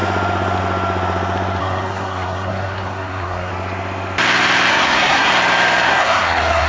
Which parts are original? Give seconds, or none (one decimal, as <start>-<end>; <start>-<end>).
0.0-1.6; 3.5-4.7; 5.3-5.9